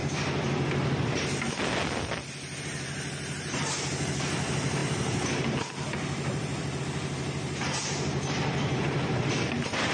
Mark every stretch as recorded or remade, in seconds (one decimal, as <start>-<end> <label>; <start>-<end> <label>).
0.0-2.6 recorded; 2.6-9.9 remade